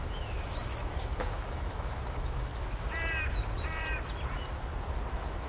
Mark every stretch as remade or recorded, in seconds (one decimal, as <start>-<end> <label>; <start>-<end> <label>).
0.0-2.5 remade; 2.5-5.1 recorded; 5.1-5.5 remade